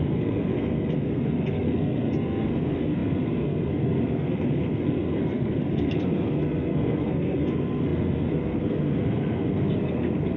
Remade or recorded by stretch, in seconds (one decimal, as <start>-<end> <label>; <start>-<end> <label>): 0.0-10.4 remade